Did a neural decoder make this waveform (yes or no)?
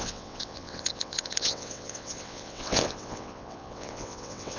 yes